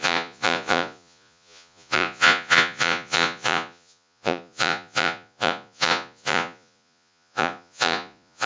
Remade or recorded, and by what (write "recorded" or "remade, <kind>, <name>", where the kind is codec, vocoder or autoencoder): remade, vocoder, Vocos